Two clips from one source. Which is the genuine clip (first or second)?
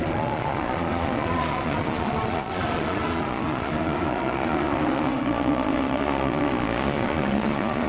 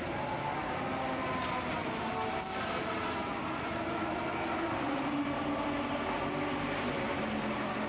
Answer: second